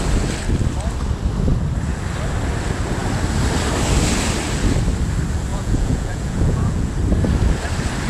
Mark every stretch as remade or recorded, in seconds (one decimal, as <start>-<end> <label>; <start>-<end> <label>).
0.0-5.5 recorded; 5.5-6.9 remade; 6.9-8.1 recorded